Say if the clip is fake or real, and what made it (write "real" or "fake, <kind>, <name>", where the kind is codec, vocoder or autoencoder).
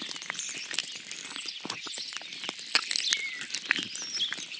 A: real